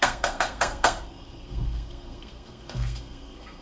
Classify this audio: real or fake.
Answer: fake